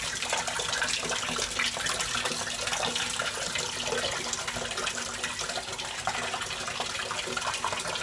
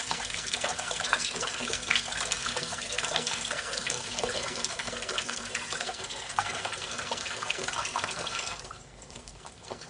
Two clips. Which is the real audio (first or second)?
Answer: first